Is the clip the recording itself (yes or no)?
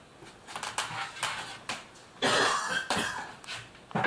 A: yes